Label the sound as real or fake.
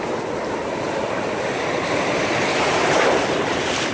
real